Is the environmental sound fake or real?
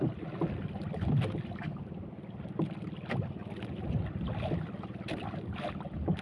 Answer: real